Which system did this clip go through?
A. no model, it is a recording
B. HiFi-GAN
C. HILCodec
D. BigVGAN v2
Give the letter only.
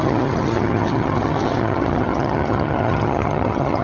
B